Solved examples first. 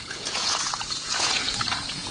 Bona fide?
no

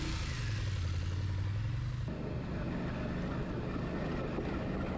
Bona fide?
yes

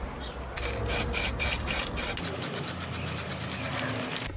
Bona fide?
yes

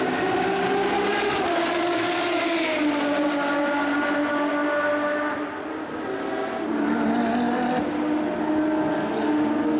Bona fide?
yes